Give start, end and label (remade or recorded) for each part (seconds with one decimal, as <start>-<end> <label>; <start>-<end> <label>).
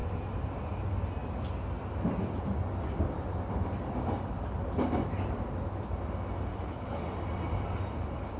0.0-6.5 recorded; 6.5-7.0 remade; 7.0-8.4 recorded